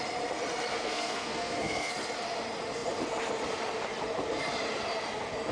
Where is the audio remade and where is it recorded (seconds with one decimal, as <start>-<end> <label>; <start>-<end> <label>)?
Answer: 0.0-0.7 recorded; 0.7-1.9 remade; 1.9-5.5 recorded